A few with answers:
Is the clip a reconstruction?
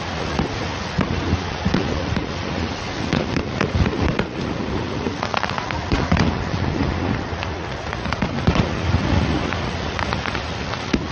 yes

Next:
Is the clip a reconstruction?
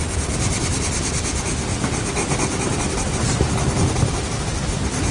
no